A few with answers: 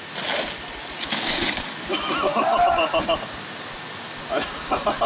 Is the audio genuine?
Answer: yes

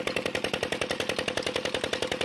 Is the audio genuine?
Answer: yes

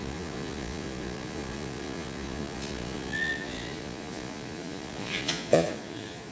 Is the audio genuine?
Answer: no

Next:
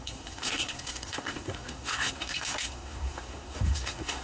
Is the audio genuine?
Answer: no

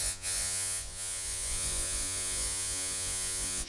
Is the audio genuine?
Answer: no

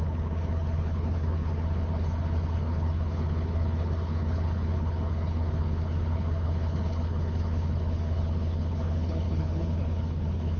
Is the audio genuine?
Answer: no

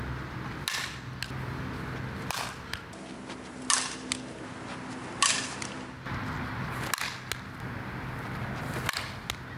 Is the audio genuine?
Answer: yes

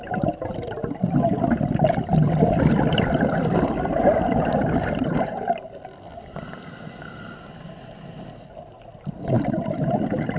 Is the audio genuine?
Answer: yes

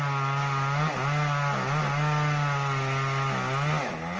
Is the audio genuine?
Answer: yes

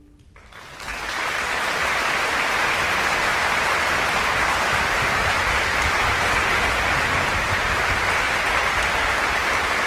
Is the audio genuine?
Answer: yes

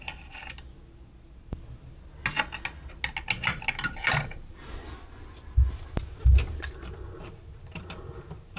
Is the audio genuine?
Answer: yes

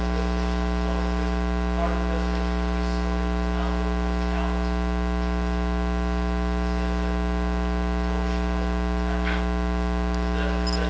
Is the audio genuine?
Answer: yes